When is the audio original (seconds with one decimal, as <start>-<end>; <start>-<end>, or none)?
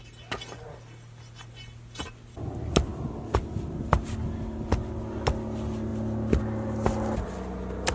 0.0-7.9